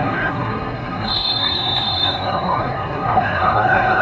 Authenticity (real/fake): fake